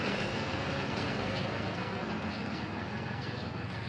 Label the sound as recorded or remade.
remade